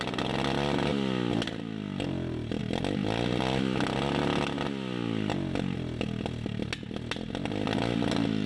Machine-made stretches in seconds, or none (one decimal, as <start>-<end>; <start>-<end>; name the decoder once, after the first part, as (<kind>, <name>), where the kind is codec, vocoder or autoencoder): none